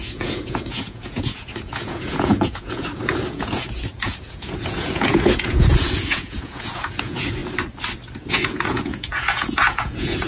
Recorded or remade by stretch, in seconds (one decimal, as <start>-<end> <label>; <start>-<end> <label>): 0.0-7.4 remade; 7.4-8.3 recorded; 8.3-10.3 remade

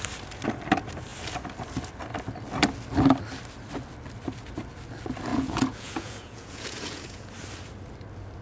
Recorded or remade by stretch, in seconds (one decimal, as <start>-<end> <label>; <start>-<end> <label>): 0.0-5.3 recorded; 5.3-7.3 remade; 7.3-8.4 recorded

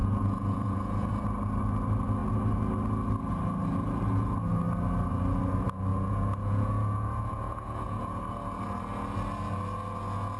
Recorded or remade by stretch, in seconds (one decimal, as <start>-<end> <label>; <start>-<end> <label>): 0.0-1.1 remade; 1.1-5.9 recorded; 5.9-8.2 remade; 8.2-10.4 recorded